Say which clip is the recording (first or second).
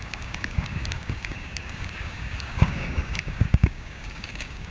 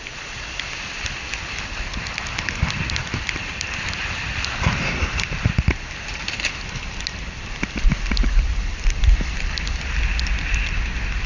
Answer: second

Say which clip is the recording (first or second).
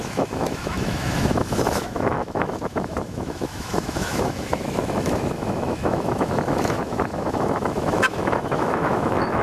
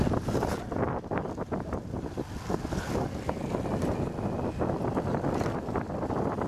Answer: second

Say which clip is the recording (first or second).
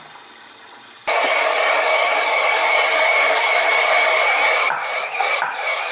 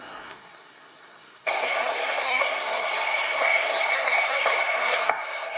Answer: first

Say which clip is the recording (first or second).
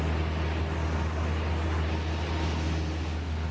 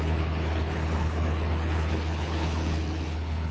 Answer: first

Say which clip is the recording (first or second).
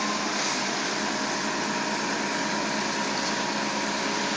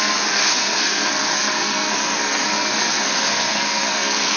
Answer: first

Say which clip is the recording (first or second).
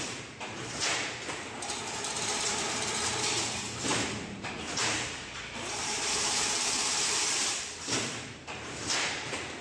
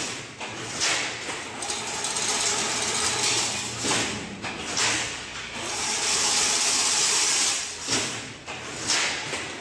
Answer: second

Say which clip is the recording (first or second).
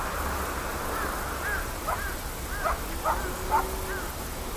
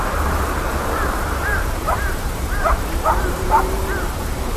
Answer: first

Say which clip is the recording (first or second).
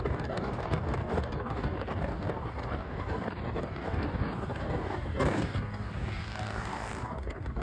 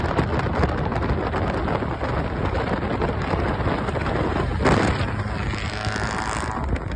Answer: second